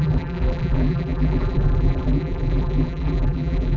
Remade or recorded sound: remade